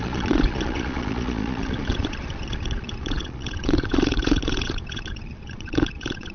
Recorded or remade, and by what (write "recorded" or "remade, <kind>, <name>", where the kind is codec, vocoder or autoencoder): remade, vocoder, Vocos